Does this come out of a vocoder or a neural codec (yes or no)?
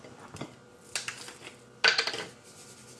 no